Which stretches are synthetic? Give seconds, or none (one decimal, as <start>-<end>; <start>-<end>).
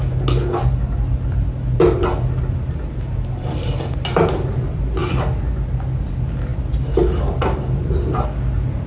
none